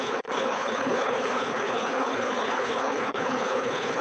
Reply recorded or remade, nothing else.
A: remade